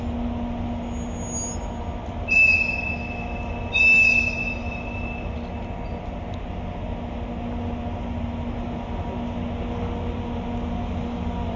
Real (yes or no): yes